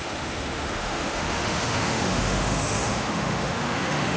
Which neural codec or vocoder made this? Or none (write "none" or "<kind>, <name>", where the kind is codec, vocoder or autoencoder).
autoencoder, DAC-VAE